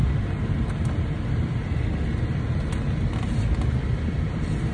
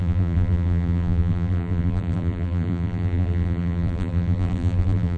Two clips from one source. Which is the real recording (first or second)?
first